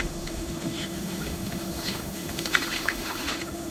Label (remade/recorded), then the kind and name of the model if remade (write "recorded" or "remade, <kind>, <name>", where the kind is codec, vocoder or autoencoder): remade, autoencoder, DAC-VAE